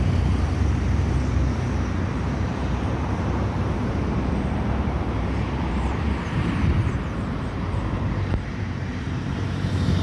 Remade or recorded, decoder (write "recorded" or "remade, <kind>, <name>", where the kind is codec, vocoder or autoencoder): remade, vocoder, BigVGAN v2